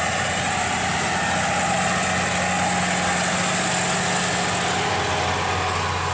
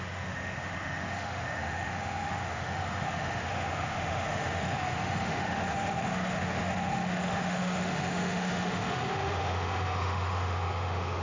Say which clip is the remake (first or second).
second